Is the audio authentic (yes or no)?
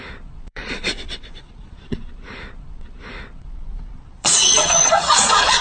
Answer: no